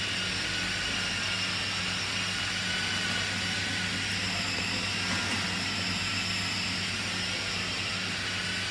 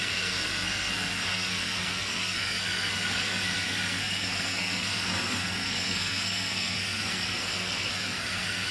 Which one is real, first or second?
first